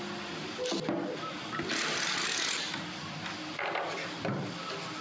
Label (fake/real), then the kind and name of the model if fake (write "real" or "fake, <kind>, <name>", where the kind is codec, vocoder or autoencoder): real